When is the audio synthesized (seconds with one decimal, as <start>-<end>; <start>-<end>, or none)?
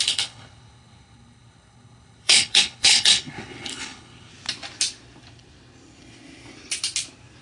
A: 0.0-4.3